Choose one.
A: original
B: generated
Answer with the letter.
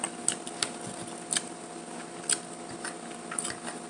A